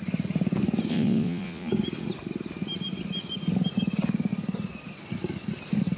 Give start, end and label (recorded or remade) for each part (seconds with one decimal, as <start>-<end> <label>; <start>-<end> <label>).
0.0-0.9 recorded; 0.9-1.7 remade; 1.7-6.0 recorded